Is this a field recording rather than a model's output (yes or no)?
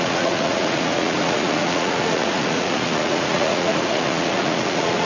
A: no